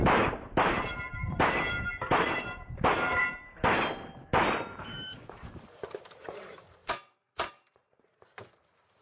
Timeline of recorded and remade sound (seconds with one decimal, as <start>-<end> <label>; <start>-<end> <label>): 0.0-9.0 remade